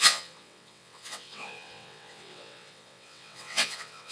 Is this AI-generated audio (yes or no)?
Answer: yes